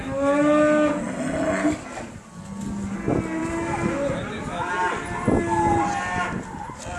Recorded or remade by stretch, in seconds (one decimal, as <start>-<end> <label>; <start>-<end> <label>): 0.0-7.0 recorded